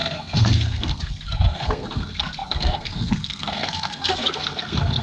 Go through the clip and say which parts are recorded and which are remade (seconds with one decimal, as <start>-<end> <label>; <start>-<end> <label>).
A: 0.0-5.0 remade